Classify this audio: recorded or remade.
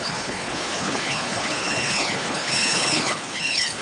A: remade